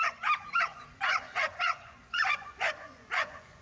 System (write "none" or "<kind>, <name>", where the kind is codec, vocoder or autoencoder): vocoder, Vocos